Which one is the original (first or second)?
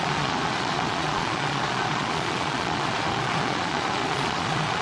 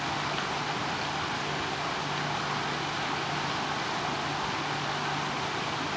second